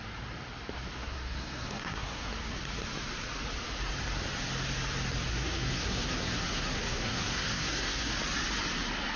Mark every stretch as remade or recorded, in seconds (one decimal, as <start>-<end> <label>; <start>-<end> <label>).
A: 0.0-1.0 recorded; 1.0-2.3 remade; 2.3-5.3 recorded; 5.3-8.1 remade; 8.1-9.2 recorded